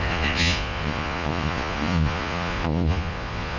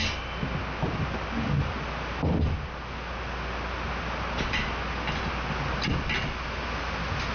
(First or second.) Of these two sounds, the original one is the second